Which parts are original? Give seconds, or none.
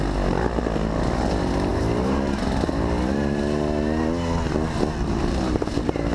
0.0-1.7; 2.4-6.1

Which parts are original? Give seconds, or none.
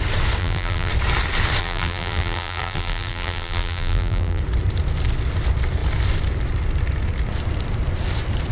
0.0-0.4; 0.9-1.6; 4.4-8.5